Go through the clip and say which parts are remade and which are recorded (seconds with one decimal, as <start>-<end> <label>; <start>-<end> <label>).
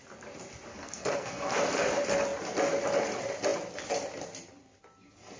0.0-0.7 recorded; 0.7-1.6 remade; 1.6-5.4 recorded